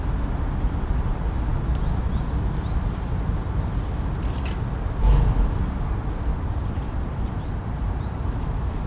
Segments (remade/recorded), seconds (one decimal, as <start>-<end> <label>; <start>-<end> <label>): 0.0-6.3 recorded; 6.3-8.9 remade